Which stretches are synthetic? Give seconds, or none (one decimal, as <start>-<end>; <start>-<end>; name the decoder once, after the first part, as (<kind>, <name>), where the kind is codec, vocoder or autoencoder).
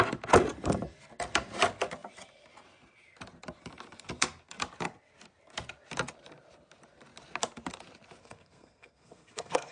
8.2-9.7 (codec, SNAC)